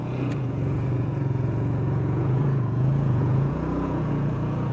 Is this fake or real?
fake